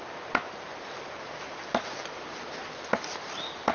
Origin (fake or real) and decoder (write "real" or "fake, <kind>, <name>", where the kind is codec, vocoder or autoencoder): real